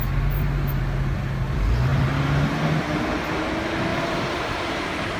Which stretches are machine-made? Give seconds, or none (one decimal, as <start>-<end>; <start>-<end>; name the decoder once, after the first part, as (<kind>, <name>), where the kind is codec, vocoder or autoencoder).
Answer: 3.9-5.2 (vocoder, BigVGAN v2)

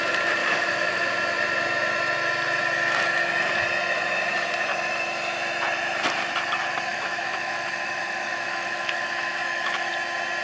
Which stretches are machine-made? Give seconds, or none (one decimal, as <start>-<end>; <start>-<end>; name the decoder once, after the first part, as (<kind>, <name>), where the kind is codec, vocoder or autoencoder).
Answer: 0.4-1.1 (autoencoder, DAC-VAE); 6.9-9.9

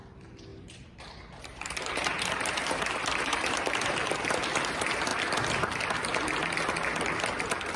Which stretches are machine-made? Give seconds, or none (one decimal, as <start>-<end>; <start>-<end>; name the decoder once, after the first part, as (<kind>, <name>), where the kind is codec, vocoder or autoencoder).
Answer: 0.5-4.1 (vocoder, BigVGAN v2)